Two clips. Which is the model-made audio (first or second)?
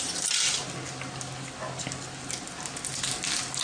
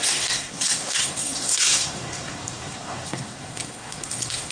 second